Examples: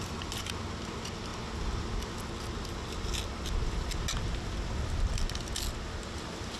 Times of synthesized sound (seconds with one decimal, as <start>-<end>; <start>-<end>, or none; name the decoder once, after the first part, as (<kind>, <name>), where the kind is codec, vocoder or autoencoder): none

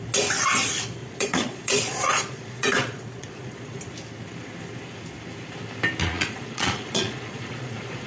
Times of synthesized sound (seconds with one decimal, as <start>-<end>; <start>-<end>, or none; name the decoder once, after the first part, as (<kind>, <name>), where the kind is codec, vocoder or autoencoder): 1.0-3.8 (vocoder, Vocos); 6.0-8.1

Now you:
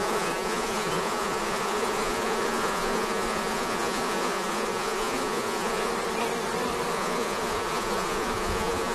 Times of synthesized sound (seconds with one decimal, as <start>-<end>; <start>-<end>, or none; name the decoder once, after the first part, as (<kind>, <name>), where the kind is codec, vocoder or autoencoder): 0.0-5.9 (vocoder, Vocos); 6.9-8.9